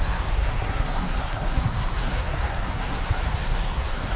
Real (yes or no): no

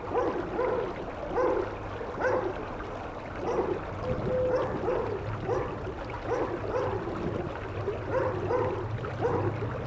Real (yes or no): yes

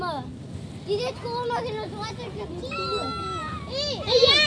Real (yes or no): yes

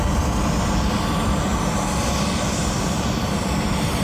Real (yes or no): yes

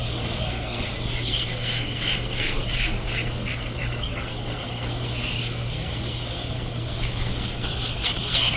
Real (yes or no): no